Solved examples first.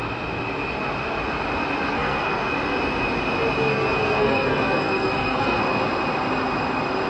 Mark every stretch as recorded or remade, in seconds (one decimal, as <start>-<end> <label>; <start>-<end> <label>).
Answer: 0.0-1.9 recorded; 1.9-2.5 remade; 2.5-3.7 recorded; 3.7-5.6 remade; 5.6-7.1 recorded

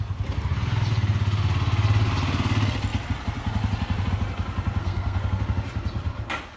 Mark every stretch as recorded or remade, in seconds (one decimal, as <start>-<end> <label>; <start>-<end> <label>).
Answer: 0.0-4.8 recorded; 4.8-5.4 remade; 5.4-6.6 recorded

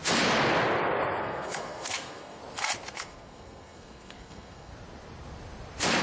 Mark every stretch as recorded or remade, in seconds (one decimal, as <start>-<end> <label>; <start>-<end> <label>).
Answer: 0.0-1.2 recorded; 1.2-2.4 remade; 2.4-2.9 recorded; 2.9-4.7 remade; 4.7-6.0 recorded

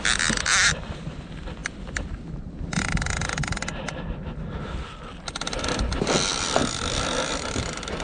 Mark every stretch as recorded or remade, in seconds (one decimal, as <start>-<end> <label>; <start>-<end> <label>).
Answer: 0.0-8.0 recorded